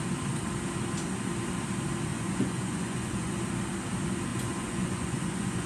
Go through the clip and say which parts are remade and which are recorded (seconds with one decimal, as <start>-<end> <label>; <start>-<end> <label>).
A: 0.0-2.1 recorded; 2.1-3.3 remade; 3.3-4.3 recorded; 4.3-5.7 remade